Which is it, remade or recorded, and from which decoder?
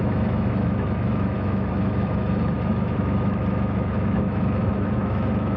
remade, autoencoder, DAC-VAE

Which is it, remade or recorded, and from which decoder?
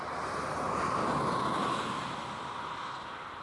recorded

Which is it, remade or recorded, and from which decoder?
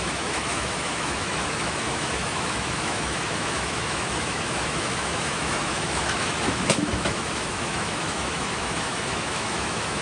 remade, autoencoder, DAC-VAE